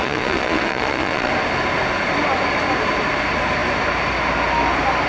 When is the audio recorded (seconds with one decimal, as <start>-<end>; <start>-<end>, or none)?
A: 1.3-5.1